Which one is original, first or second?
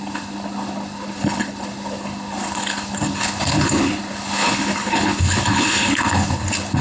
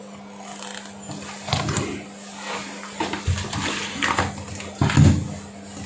second